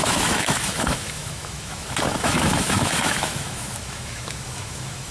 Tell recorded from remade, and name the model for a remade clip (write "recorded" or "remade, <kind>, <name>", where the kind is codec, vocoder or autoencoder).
remade, autoencoder, DAC-VAE